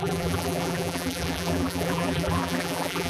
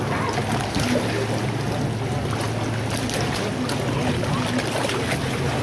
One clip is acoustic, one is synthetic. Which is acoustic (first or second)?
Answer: second